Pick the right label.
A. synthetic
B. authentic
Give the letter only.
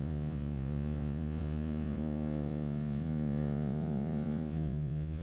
A